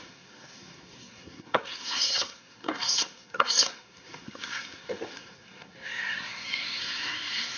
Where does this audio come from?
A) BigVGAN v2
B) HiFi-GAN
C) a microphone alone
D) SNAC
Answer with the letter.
D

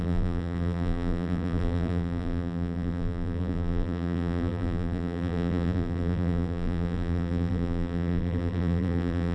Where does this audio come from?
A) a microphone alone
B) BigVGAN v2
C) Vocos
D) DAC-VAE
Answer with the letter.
B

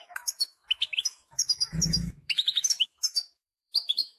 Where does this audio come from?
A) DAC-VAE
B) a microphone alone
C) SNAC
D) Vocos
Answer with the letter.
A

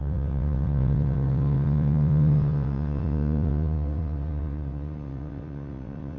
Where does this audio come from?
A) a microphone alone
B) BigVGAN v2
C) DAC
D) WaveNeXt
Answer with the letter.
D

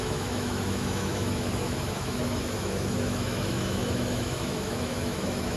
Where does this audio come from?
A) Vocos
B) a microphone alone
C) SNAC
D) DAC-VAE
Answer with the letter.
D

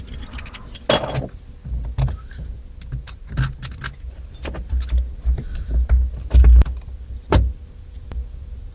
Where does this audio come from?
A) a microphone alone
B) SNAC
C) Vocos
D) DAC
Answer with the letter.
A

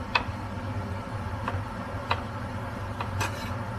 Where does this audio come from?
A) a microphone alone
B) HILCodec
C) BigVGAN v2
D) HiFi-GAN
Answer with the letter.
A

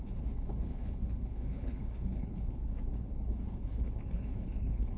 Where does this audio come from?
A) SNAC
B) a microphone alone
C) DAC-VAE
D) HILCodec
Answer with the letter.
D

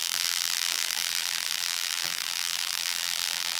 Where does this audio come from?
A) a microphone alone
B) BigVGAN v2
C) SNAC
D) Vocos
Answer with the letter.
B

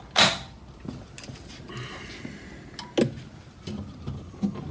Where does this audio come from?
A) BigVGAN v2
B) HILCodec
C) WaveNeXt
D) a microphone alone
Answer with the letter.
D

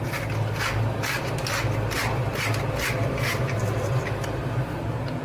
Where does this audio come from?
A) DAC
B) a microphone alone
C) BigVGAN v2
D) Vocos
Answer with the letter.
B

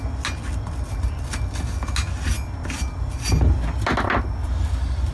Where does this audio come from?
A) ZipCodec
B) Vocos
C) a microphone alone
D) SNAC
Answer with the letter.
C